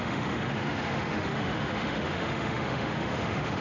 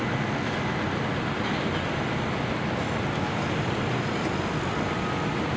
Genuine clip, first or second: second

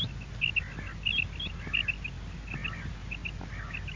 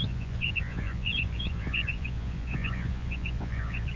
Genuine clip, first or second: first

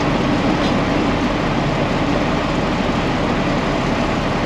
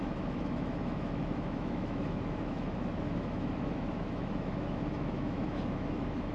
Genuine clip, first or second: first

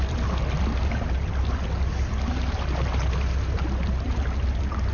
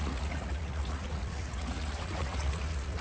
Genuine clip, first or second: first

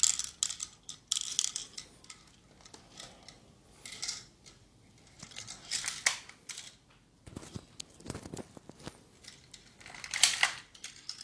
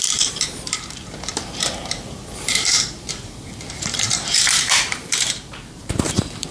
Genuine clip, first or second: first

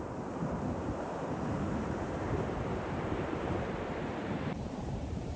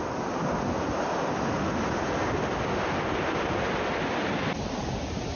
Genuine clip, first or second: second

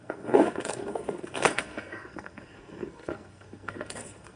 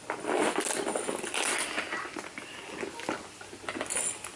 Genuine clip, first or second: second